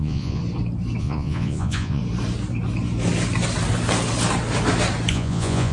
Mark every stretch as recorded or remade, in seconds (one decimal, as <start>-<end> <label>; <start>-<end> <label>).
0.0-0.4 remade; 0.4-1.0 recorded; 1.0-2.0 remade; 2.0-5.1 recorded; 5.1-5.7 remade

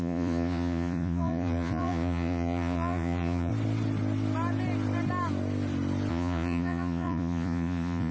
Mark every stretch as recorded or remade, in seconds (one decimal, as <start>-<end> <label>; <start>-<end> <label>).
0.0-3.5 remade; 3.5-6.1 recorded; 6.1-8.1 remade

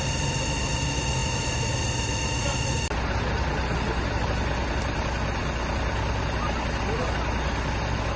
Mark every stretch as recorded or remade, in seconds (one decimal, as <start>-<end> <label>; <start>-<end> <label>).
0.0-8.2 recorded